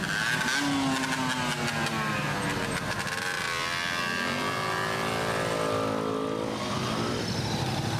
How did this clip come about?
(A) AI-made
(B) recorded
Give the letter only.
B